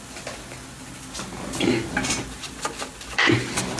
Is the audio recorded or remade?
recorded